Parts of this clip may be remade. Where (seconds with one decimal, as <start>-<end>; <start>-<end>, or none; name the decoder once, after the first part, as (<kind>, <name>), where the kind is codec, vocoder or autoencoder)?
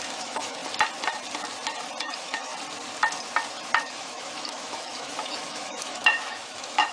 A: 0.0-0.6 (autoencoder, DAC-VAE); 2.0-2.5; 3.8-6.9